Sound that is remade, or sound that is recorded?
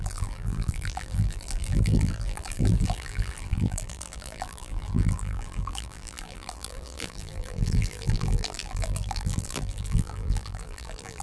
remade